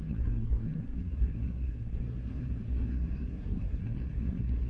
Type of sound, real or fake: fake